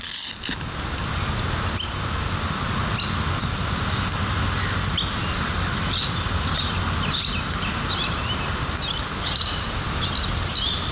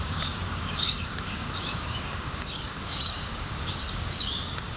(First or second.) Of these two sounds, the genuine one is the first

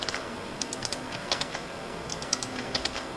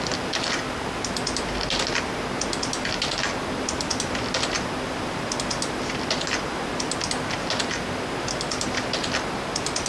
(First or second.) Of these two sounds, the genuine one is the second